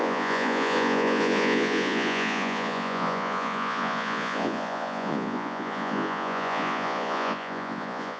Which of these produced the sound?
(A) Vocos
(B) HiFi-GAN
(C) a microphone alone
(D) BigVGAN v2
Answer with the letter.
A